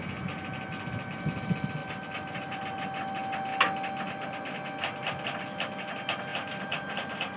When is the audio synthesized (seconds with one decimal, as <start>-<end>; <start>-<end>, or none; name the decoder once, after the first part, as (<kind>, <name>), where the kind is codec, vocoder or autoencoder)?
1.8-2.6 (vocoder, BigVGAN v2); 6.3-7.4